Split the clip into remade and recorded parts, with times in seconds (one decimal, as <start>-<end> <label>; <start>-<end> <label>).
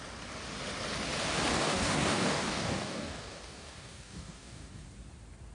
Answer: 0.0-1.5 recorded; 1.5-4.8 remade; 4.8-5.5 recorded